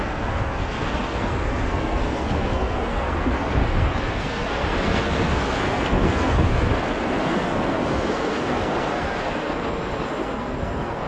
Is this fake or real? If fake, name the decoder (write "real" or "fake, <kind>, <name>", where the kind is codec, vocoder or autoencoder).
fake, codec, SNAC